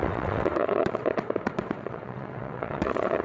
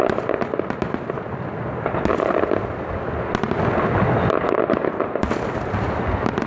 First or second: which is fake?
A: first